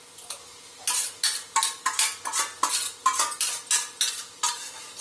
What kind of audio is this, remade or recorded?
recorded